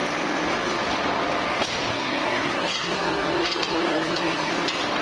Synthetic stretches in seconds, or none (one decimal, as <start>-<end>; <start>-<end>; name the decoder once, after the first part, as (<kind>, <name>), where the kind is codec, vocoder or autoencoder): 1.9-4.5 (codec, SNAC)